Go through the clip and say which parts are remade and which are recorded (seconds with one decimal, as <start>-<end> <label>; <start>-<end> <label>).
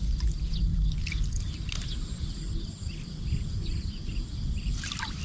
0.0-5.2 recorded